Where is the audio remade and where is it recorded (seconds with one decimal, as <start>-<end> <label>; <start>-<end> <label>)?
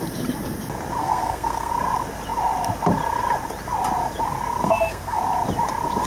0.0-1.0 recorded; 1.0-1.7 remade; 1.7-4.6 recorded; 4.6-5.2 remade; 5.2-6.1 recorded